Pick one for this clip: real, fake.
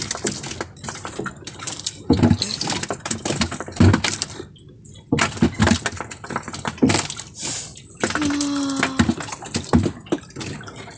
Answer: real